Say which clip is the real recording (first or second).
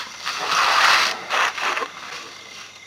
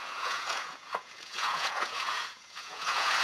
first